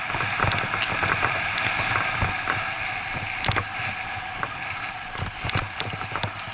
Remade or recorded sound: recorded